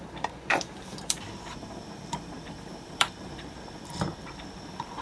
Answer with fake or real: fake